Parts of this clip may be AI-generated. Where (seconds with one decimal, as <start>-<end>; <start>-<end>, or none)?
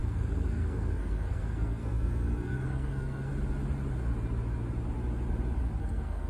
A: 0.0-3.3; 5.8-6.3